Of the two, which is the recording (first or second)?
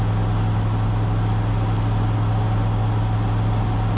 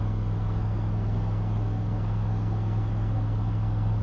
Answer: first